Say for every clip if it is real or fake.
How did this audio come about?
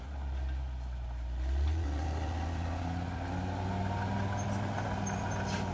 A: real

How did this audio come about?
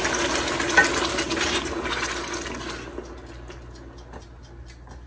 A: real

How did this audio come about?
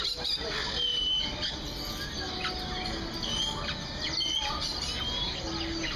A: real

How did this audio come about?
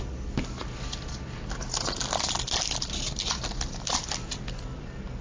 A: real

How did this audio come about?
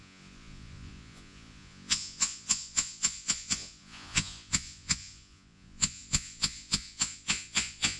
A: fake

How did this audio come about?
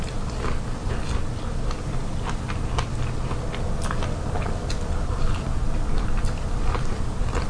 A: real